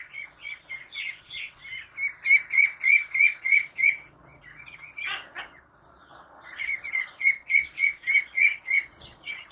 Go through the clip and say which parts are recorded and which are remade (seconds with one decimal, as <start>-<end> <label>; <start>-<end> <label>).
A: 0.0-1.6 remade; 1.6-2.5 recorded; 2.5-9.5 remade